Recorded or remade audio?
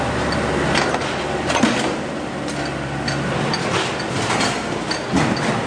recorded